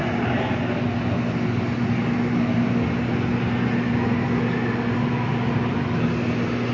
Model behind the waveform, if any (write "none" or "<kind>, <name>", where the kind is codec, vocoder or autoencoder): none